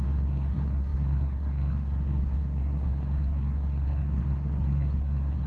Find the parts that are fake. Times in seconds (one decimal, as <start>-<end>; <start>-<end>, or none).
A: 0.0-5.5

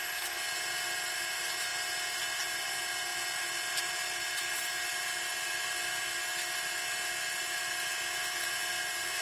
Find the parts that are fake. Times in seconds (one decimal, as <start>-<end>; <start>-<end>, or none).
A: none

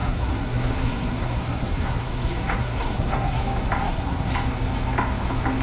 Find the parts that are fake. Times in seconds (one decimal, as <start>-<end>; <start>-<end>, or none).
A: 0.0-3.4; 3.8-4.3

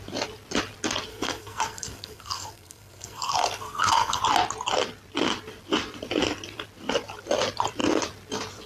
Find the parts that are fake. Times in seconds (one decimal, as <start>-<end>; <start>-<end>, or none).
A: 1.1-4.2

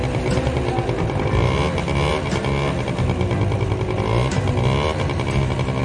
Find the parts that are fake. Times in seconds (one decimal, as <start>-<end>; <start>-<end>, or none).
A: none

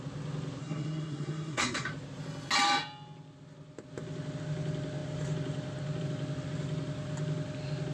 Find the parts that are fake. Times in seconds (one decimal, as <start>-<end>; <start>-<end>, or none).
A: 0.6-1.9

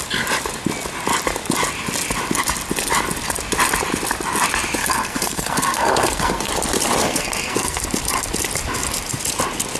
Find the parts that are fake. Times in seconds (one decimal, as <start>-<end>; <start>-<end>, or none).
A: 4.8-6.5; 7.0-7.8

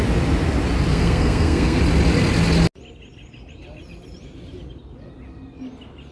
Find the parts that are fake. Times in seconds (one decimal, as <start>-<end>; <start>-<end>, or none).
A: 0.9-1.8